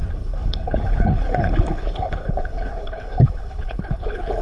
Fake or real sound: fake